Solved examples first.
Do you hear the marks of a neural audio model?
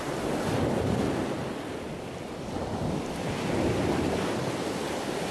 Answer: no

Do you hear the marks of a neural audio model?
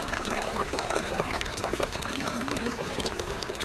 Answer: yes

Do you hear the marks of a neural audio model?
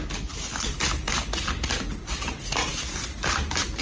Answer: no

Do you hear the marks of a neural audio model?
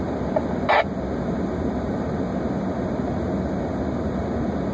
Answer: no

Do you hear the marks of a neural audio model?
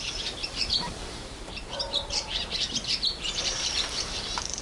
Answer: yes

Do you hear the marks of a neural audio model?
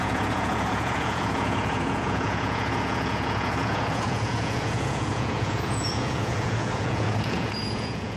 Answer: yes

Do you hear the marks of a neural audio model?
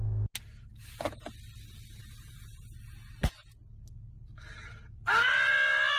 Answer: no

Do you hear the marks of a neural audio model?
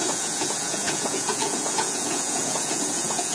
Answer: yes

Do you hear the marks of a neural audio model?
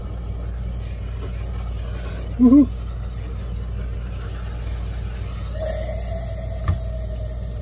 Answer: no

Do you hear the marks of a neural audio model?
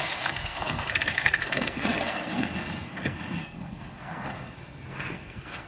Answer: yes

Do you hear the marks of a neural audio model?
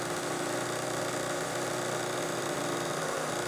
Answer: no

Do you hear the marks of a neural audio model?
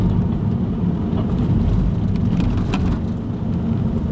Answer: no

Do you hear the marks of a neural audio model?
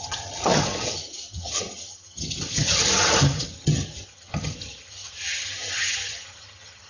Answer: yes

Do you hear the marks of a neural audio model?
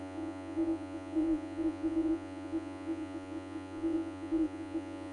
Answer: yes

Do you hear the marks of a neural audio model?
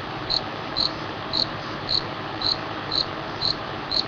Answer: yes